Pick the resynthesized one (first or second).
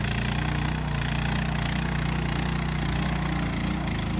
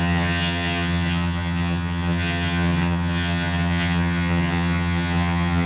second